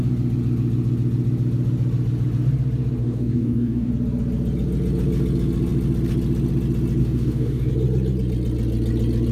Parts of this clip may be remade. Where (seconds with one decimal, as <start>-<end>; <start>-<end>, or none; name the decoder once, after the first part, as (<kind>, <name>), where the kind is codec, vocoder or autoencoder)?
3.0-3.9 (codec, DAC); 7.0-7.7